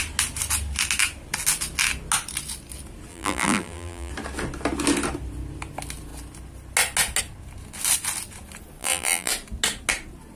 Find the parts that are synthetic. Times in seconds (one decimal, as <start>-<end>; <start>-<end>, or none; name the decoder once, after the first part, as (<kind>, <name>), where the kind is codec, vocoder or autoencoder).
3.1-4.1 (vocoder, BigVGAN v2); 8.8-9.3